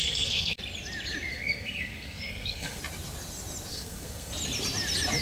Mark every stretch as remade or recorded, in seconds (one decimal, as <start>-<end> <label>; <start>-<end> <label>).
0.0-0.6 remade; 0.6-1.3 recorded; 1.3-2.8 remade; 2.8-3.7 recorded; 3.7-4.3 remade; 4.3-5.2 recorded